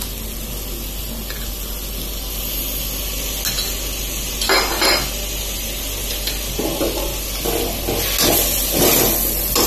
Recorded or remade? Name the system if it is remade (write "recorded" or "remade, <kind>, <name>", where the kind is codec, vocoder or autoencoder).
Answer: recorded